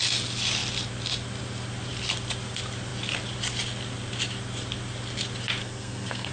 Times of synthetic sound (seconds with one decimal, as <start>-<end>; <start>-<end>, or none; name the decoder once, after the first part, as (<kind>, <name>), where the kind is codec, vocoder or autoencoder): 5.6-6.3 (codec, SNAC)